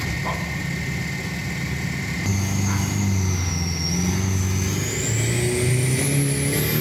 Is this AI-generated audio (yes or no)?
no